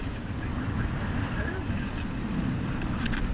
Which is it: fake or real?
real